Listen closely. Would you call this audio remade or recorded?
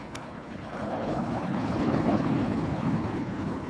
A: remade